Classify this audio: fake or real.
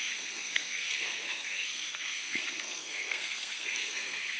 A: fake